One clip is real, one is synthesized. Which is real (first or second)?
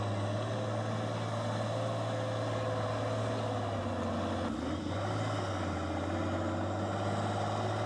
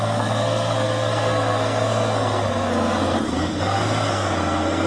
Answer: first